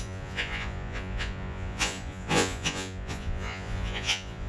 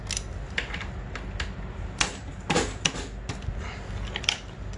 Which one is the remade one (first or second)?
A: first